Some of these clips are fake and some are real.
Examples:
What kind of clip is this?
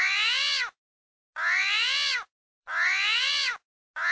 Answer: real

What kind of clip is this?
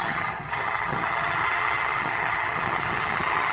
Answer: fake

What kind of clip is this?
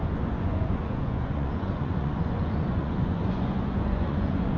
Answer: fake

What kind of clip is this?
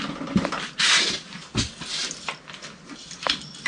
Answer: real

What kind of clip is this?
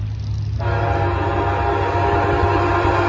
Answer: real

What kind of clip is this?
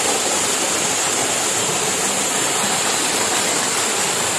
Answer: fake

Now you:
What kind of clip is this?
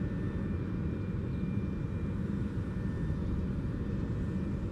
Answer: real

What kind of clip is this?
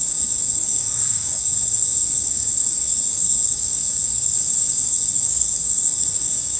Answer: fake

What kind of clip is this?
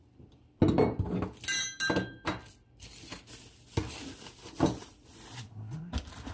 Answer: real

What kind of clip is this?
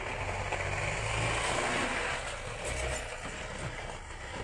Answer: real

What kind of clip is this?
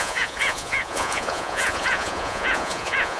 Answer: fake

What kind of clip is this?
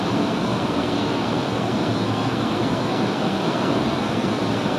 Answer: fake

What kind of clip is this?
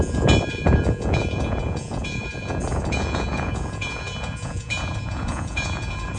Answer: fake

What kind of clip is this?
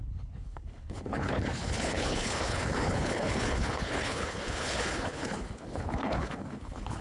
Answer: fake